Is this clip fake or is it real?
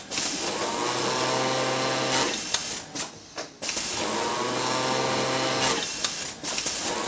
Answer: real